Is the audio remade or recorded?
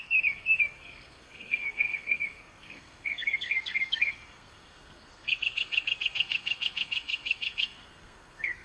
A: remade